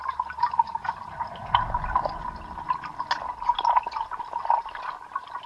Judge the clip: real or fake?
real